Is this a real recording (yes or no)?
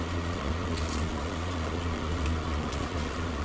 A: no